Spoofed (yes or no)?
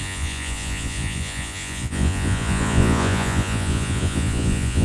yes